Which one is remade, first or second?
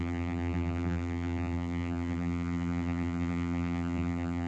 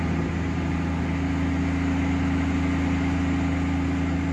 first